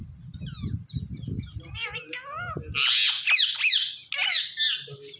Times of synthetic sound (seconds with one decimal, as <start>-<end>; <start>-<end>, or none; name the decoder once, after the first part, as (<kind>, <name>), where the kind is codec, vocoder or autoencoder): none